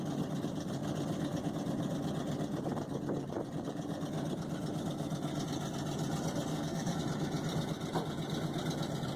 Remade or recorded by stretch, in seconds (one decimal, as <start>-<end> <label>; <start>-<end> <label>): 0.0-6.5 recorded; 6.5-7.0 remade; 7.0-9.2 recorded